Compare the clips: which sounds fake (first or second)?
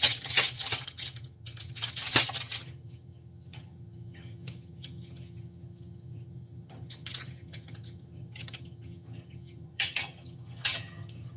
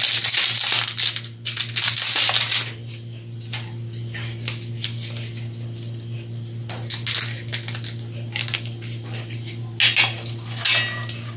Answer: first